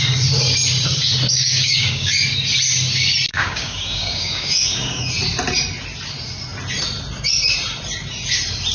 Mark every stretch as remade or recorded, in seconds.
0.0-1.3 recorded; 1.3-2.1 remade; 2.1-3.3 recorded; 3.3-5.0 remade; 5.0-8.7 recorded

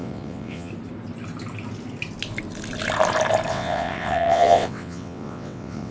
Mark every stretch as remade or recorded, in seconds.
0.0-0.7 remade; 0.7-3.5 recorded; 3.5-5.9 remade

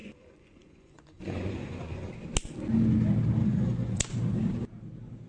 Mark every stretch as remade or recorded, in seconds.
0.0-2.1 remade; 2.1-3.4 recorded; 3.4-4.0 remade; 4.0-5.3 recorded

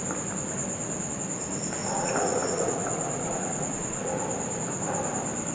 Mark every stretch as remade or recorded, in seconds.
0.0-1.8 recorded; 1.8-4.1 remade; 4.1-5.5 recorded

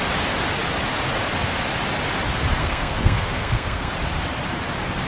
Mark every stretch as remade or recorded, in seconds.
0.0-2.6 recorded; 2.6-3.9 remade; 3.9-5.1 recorded

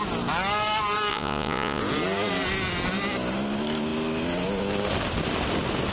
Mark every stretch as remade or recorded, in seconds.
0.0-1.1 recorded; 1.1-1.8 remade; 1.8-5.9 recorded

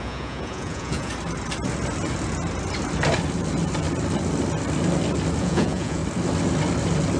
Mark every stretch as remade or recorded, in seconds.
0.0-1.1 remade; 1.1-5.4 recorded; 5.4-6.0 remade; 6.0-7.2 recorded

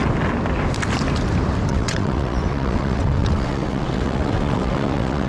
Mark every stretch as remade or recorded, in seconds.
0.0-1.7 recorded; 1.7-5.3 remade